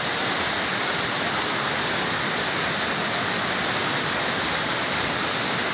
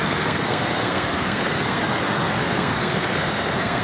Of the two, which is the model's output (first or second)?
second